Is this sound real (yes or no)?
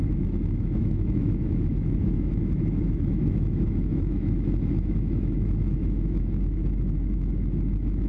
no